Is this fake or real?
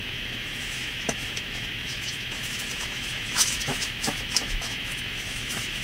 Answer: fake